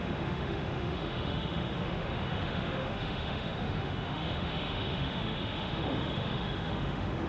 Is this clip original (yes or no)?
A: no